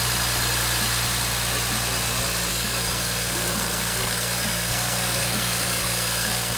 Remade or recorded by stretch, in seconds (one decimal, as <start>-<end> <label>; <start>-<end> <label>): 0.0-2.5 recorded; 2.5-6.6 remade

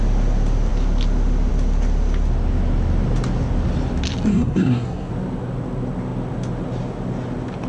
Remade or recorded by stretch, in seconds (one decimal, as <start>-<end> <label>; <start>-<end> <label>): 0.0-4.3 recorded; 4.3-5.1 remade; 5.1-7.7 recorded

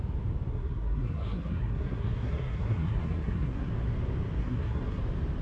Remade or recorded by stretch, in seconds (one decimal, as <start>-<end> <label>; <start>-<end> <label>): 0.0-0.5 recorded; 0.5-3.7 remade; 3.7-4.4 recorded; 4.4-5.0 remade; 5.0-5.4 recorded

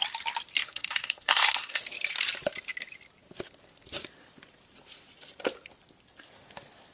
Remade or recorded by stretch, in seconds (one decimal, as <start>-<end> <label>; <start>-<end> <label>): 0.0-0.6 recorded; 0.6-1.8 remade; 1.8-6.9 recorded

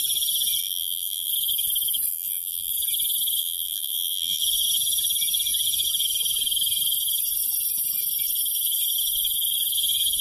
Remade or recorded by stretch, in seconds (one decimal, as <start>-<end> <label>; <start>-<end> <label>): 0.0-0.6 recorded; 0.6-1.3 remade; 1.3-2.1 recorded; 2.1-2.7 remade; 2.7-3.4 recorded; 3.4-4.4 remade; 4.4-10.2 recorded

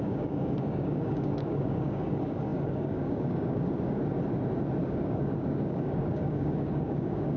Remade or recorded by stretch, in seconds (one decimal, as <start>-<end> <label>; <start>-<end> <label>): 0.0-4.0 remade; 4.0-4.8 recorded; 4.8-7.4 remade